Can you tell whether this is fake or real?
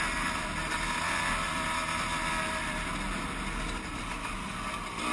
real